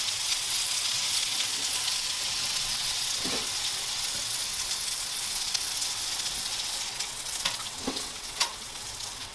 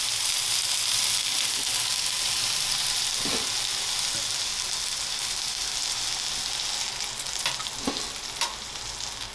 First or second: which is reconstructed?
first